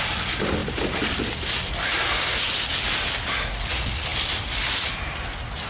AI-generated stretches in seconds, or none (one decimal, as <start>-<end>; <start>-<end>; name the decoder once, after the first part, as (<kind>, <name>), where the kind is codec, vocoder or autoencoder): none